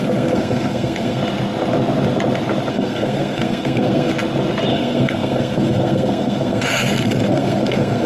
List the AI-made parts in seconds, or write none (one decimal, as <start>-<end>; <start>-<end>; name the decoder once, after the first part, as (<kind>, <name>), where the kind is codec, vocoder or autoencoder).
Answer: 0.0-1.2 (codec, SNAC); 2.7-4.1; 4.7-8.1

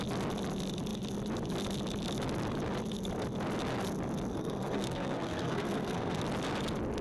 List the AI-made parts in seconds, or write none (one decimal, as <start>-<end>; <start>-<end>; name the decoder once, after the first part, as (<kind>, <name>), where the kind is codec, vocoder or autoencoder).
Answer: 4.3-6.2 (codec, SNAC)

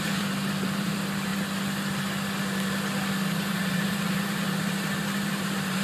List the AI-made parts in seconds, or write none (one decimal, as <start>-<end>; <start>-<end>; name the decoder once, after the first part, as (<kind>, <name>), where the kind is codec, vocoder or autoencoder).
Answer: 0.0-1.3 (vocoder, BigVGAN v2); 3.5-5.8

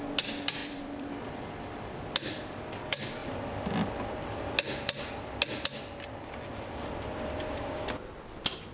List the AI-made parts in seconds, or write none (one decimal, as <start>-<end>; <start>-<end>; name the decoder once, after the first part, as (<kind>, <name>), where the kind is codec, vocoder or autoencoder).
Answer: 0.6-2.0 (vocoder, BigVGAN v2)

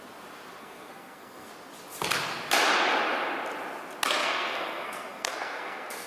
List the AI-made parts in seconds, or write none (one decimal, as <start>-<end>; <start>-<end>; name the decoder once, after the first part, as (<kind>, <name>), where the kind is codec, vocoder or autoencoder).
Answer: 0.6-1.5 (codec, SNAC); 4.2-6.1

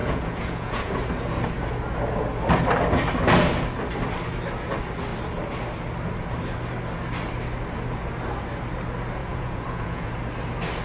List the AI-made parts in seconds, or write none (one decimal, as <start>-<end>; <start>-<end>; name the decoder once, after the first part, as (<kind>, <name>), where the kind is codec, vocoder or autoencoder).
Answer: 0.0-0.9 (vocoder, Vocos); 9.2-10.1

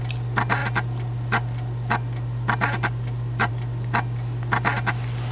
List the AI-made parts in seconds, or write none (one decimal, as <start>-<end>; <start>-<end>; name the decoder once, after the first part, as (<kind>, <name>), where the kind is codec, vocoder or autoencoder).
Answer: none